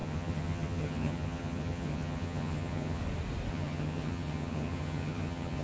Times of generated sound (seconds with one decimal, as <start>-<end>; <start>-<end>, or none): 0.0-3.0; 3.5-5.6